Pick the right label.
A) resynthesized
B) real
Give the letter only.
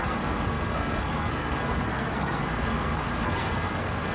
A